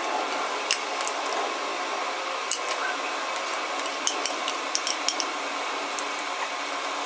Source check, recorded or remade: recorded